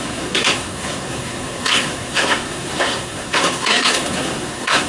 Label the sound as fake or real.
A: fake